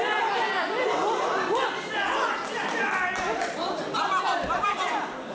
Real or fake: real